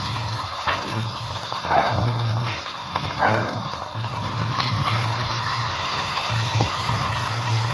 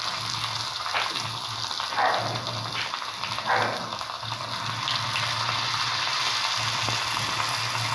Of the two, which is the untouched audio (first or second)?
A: second